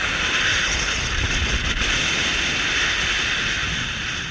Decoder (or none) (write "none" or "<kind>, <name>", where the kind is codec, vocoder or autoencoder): none